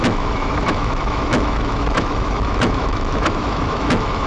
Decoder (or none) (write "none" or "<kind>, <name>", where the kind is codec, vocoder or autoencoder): autoencoder, DAC-VAE